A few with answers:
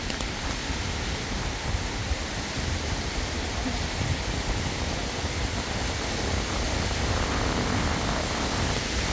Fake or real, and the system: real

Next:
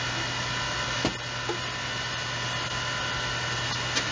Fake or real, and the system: real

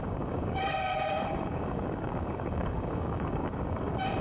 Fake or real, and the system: fake, codec, DAC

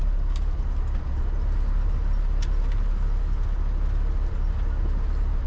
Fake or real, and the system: real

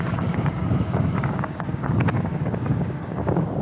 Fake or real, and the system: fake, codec, DAC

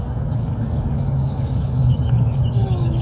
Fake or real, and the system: fake, codec, DAC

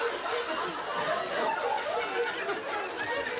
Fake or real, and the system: real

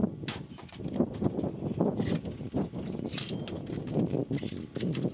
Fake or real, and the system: real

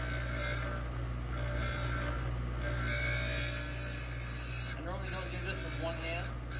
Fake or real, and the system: real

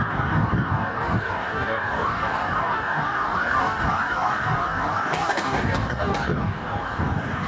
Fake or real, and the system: fake, codec, DAC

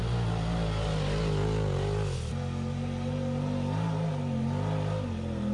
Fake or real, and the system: real